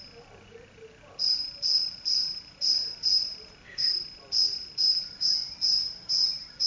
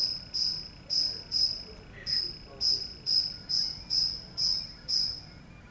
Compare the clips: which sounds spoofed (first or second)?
first